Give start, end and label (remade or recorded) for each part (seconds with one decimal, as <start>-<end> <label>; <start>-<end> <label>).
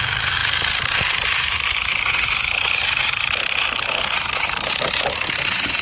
0.0-5.8 recorded